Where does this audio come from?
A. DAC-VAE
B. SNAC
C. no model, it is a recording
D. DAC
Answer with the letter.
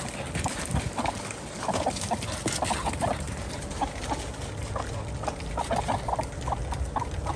C